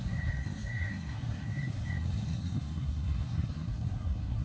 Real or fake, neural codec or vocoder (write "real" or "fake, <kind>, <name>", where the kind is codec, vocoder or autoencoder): fake, codec, SNAC